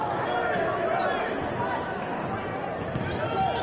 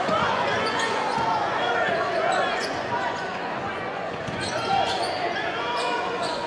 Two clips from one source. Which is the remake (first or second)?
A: second